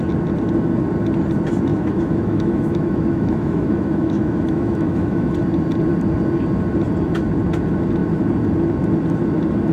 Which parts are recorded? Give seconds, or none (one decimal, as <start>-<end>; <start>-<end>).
0.0-1.7; 5.3-9.7